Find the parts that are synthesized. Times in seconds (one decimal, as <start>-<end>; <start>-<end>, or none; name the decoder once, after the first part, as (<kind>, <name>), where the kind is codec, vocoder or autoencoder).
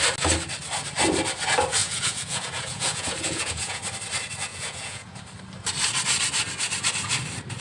1.8-3.8 (vocoder, Vocos); 4.5-5.2